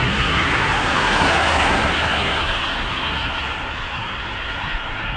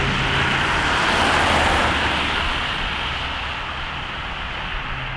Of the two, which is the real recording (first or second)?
second